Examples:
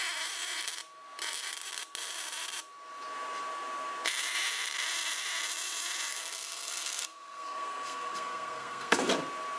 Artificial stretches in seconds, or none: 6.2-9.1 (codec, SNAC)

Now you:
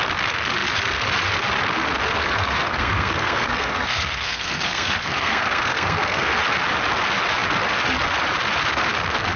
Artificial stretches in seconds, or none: 2.2-6.3 (codec, SNAC)

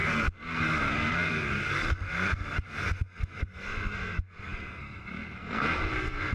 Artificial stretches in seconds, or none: 0.0-6.3 (codec, SNAC)

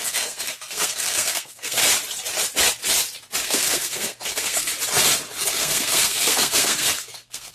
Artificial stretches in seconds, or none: 0.0-1.8 (codec, SNAC); 3.4-4.7; 5.4-7.5